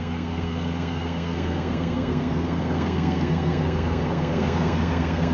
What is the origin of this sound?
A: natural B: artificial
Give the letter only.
B